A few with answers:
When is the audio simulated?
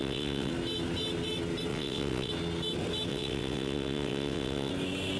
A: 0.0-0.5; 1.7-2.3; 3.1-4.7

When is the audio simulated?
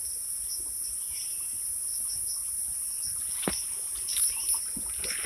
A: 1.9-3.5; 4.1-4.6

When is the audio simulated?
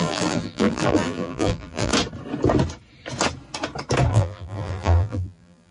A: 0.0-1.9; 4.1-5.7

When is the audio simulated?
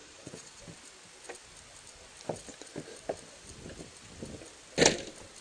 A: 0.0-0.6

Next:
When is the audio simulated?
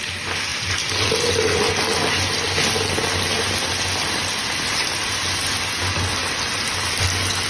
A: 0.5-1.6; 6.2-7.5